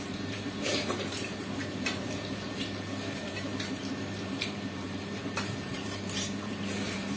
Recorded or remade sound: remade